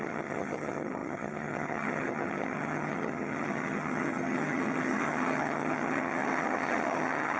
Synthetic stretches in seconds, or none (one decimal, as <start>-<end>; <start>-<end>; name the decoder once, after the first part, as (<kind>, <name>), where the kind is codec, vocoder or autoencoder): 0.0-7.4 (vocoder, HiFi-GAN)